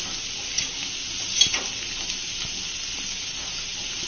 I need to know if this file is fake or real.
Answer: real